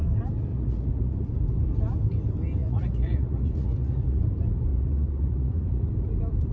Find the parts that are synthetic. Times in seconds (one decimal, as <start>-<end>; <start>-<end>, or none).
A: 0.5-1.3; 2.6-4.2; 4.7-5.9